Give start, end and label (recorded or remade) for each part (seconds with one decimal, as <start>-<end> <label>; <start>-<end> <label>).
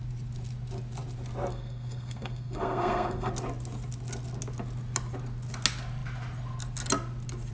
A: 0.0-1.5 recorded; 1.5-3.3 remade; 3.3-7.5 recorded